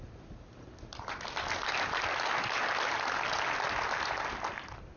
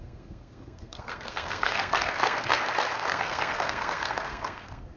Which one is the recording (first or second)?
first